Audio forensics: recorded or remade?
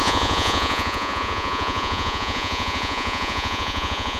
remade